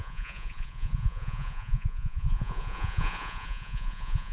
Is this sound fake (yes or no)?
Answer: yes